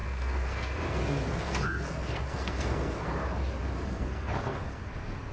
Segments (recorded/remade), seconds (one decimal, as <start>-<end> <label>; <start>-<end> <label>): 0.0-3.1 remade; 3.1-3.9 recorded; 3.9-5.3 remade